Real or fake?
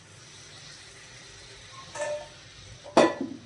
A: real